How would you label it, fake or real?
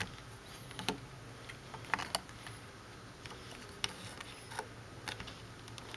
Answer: real